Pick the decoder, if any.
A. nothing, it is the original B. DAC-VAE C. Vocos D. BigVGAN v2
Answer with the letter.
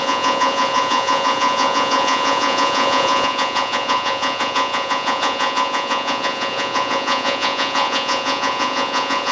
C